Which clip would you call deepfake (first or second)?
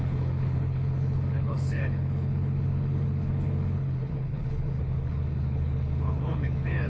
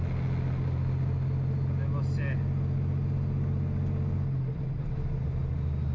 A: first